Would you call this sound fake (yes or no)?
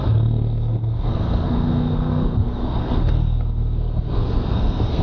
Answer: yes